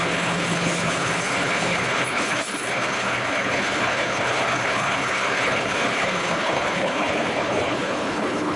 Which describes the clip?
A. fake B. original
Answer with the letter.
A